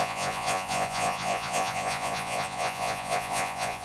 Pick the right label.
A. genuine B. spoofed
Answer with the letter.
B